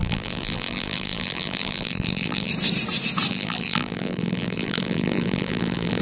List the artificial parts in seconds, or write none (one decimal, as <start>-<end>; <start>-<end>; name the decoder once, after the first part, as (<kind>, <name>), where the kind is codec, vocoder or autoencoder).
0.0-2.5 (vocoder, BigVGAN v2); 3.3-6.0